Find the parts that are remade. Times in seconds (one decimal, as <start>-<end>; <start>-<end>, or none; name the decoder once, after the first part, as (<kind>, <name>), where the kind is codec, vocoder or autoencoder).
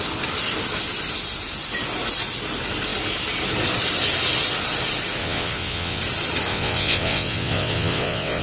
5.2-6.0 (vocoder, WaveNeXt); 6.5-8.4